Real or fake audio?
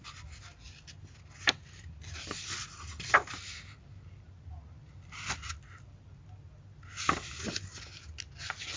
real